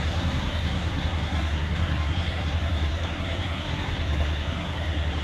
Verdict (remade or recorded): remade